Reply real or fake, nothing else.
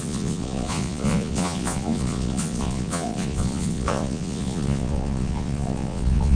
fake